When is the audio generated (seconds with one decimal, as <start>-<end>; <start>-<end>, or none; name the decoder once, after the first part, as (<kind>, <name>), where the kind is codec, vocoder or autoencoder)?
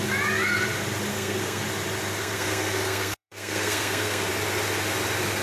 1.1-1.6 (codec, SNAC); 2.2-4.3